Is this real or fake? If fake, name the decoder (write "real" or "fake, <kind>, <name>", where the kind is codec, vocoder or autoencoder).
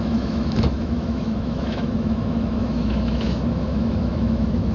fake, autoencoder, DAC-VAE